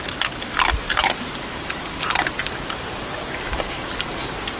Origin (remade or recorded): remade